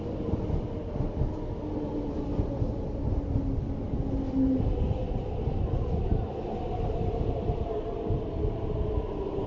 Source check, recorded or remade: recorded